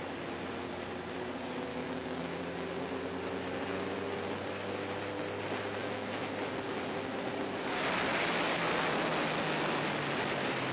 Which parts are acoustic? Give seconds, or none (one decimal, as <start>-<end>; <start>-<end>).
0.0-1.7; 2.4-5.8; 6.3-10.7